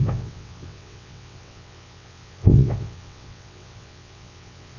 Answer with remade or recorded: remade